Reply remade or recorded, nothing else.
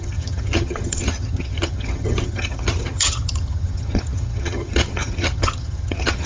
remade